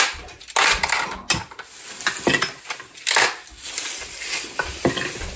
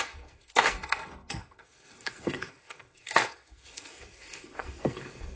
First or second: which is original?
first